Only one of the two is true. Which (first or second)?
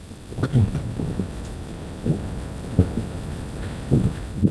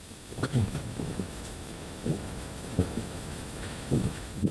first